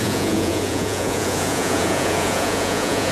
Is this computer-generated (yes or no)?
yes